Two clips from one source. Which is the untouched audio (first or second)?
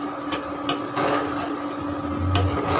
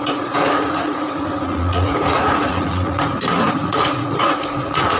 first